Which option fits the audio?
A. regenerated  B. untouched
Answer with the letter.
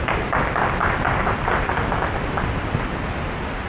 B